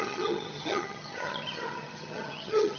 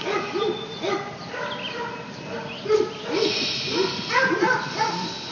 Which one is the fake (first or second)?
first